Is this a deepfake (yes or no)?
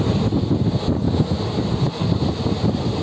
no